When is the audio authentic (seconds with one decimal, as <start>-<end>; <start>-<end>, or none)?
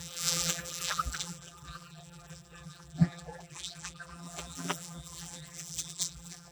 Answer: none